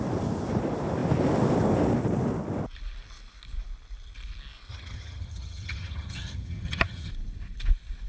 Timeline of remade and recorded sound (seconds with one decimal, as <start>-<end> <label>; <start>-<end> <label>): 0.0-4.7 recorded; 4.7-7.1 remade; 7.1-8.1 recorded